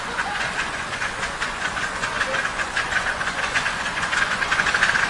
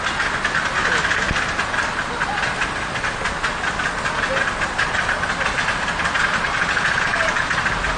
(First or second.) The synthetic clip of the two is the first